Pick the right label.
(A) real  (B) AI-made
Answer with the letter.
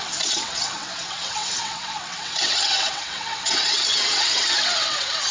B